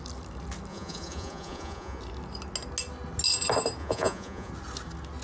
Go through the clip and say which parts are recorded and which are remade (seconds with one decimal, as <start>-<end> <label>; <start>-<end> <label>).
0.0-0.7 recorded; 0.7-2.0 remade; 2.0-3.8 recorded; 3.8-4.5 remade; 4.5-5.2 recorded